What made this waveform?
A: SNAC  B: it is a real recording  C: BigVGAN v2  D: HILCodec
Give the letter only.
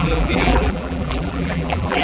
C